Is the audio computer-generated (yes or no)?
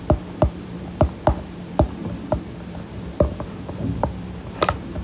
yes